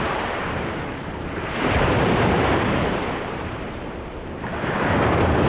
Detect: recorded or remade remade